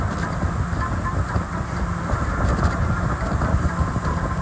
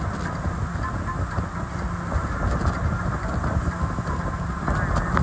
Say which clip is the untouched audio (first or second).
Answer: second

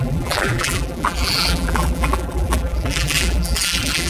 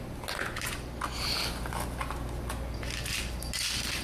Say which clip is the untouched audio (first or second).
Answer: second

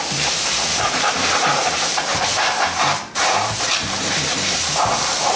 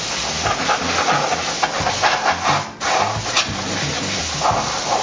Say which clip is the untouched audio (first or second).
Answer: second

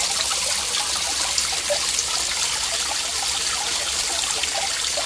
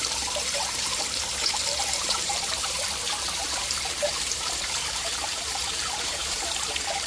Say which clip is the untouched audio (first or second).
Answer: first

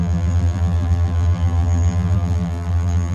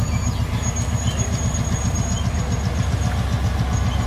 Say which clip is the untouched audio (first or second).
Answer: second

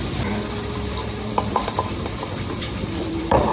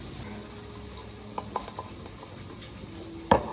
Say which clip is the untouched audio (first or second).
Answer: second